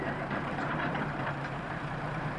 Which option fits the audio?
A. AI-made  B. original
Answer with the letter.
A